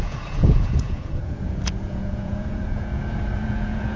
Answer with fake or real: fake